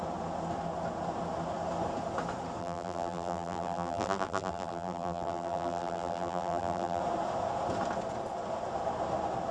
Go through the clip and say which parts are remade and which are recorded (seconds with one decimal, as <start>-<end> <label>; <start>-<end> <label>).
0.0-2.6 recorded; 2.6-7.0 remade; 7.0-9.5 recorded